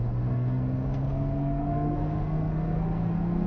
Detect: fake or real fake